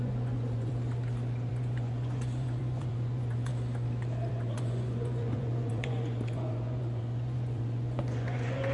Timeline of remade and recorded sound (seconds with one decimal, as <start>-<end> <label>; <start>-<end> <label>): 0.0-0.7 remade; 0.7-1.5 recorded; 1.5-3.5 remade; 3.5-4.3 recorded; 4.3-8.7 remade